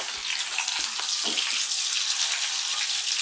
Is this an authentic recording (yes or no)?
yes